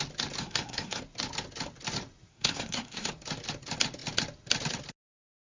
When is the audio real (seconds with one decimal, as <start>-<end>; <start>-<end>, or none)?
0.0-0.4; 1.0-2.3; 3.1-5.4